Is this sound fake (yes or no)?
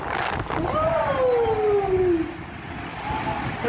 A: no